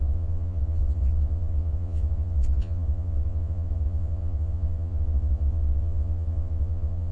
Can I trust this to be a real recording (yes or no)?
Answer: no